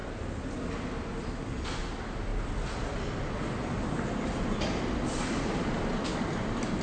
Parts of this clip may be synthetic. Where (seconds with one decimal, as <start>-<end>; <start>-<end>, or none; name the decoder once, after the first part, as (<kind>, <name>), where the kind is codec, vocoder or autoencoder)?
none